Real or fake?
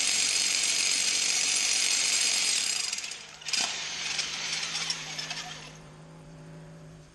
fake